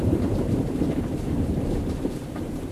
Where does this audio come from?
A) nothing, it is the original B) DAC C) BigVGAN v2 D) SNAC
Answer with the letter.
C